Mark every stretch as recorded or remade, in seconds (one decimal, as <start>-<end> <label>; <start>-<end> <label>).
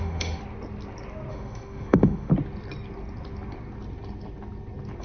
0.0-0.4 remade; 0.4-1.3 recorded; 1.3-2.3 remade; 2.3-5.0 recorded